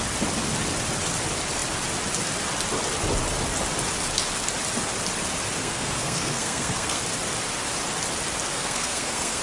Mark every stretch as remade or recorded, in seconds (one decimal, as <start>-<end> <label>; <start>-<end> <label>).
0.0-5.6 recorded; 5.6-7.0 remade; 7.0-8.5 recorded; 8.5-9.4 remade

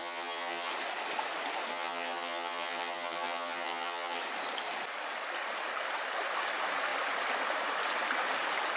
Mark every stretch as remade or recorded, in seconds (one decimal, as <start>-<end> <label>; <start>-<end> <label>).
0.0-0.7 remade; 0.7-1.7 recorded; 1.7-4.2 remade; 4.2-8.8 recorded

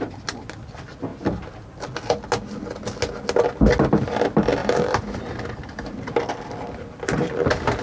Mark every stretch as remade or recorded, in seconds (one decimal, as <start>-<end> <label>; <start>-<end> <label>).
0.0-4.6 recorded; 4.6-5.6 remade; 5.6-7.8 recorded

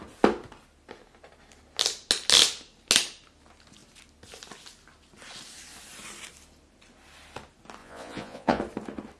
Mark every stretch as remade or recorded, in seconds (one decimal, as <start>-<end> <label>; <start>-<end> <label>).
0.0-7.8 recorded; 7.8-8.6 remade; 8.6-9.2 recorded

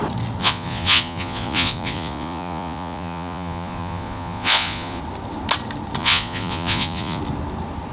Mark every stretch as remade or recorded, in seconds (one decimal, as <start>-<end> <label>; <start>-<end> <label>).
0.0-0.4 recorded; 0.4-5.0 remade; 5.0-6.0 recorded; 6.0-7.2 remade; 7.2-7.9 recorded

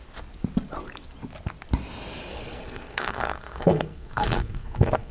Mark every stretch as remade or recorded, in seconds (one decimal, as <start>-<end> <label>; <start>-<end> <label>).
0.0-2.3 recorded; 2.3-5.1 remade

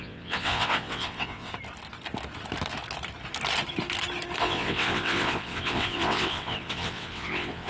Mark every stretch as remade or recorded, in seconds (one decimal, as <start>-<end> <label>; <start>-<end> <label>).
0.0-1.5 remade; 1.5-4.4 recorded; 4.4-7.7 remade